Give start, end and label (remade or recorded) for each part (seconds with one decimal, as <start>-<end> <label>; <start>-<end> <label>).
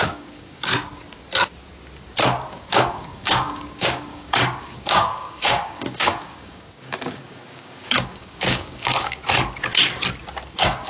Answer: 0.0-0.7 remade; 0.7-2.5 recorded; 2.5-9.2 remade; 9.2-10.5 recorded; 10.5-10.9 remade